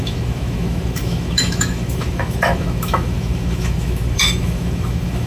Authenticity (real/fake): fake